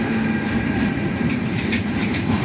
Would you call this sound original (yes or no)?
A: no